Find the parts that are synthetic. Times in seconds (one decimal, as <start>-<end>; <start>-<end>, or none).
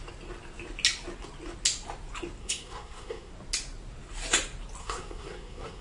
2.4-3.3; 4.8-5.8